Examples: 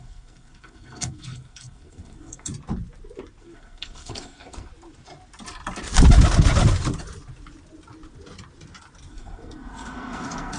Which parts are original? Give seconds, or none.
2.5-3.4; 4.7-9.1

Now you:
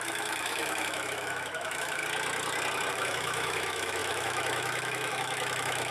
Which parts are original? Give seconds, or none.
2.0-2.9

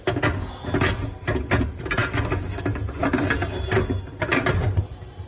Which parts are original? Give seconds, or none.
0.0-5.3

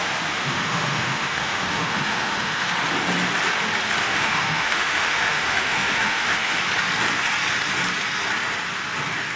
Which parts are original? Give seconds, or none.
0.0-0.4; 2.7-4.0; 6.6-9.4